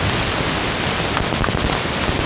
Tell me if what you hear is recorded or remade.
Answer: recorded